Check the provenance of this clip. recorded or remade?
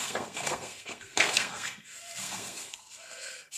remade